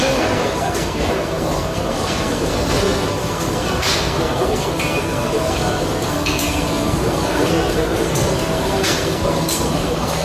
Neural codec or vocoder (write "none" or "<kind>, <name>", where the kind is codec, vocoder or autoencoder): codec, SNAC